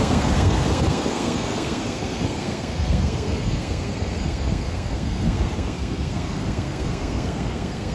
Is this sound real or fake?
fake